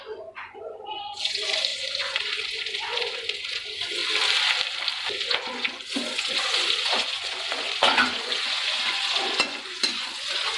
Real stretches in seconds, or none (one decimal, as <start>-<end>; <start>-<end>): 4.0-5.1